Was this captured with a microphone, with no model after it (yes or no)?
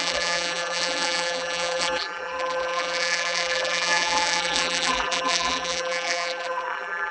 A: no